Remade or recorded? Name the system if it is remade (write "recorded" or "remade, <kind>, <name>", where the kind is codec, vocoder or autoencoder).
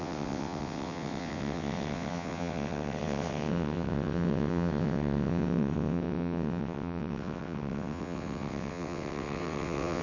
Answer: remade, vocoder, WaveNeXt